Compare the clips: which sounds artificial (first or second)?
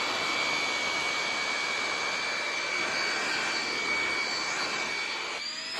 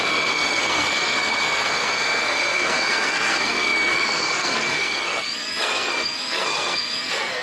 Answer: second